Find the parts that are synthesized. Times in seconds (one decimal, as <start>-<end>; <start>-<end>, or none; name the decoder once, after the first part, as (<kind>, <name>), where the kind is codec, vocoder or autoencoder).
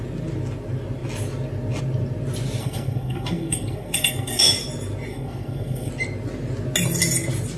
2.6-4.4 (codec, SNAC); 5.1-5.9